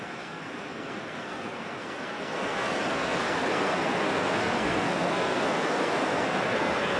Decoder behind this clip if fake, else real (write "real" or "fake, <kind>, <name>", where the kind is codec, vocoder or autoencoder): fake, codec, SNAC